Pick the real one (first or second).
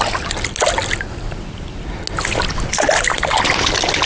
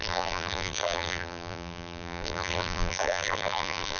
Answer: first